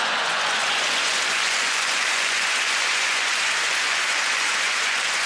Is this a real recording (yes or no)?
no